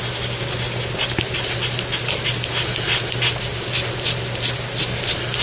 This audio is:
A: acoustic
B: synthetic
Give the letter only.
A